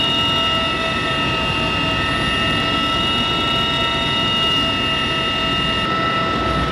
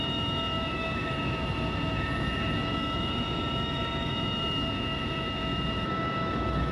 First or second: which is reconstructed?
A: second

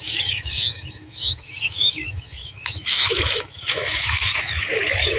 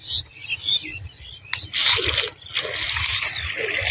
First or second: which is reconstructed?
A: first